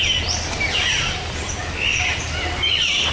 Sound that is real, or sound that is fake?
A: real